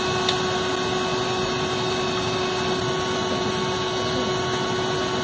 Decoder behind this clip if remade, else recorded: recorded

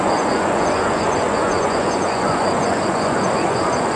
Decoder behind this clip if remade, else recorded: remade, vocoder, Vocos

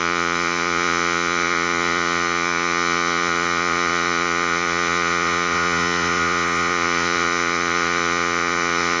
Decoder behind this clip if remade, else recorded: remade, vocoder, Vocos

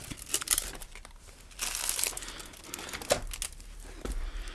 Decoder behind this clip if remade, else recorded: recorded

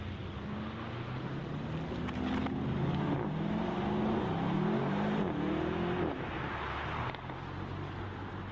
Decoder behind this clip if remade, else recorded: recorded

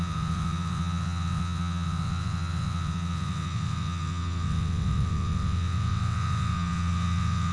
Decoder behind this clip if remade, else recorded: remade, vocoder, WaveNeXt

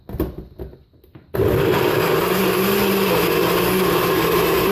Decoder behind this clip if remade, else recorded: recorded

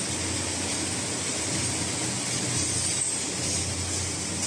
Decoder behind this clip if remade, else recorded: recorded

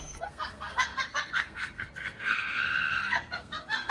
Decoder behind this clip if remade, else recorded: remade, codec, SNAC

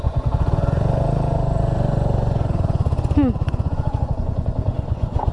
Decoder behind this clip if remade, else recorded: remade, vocoder, Vocos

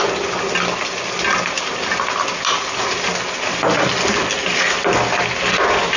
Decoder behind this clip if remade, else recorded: recorded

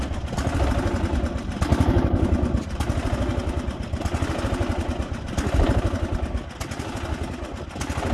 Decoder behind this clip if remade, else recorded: recorded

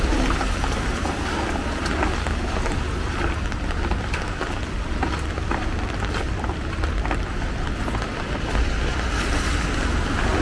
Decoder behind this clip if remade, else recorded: recorded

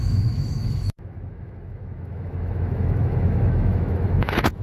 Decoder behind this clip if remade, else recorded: remade, autoencoder, DAC-VAE